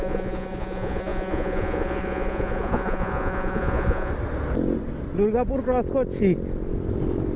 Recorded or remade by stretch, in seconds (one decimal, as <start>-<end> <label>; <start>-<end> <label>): 0.0-4.1 remade; 4.1-7.4 recorded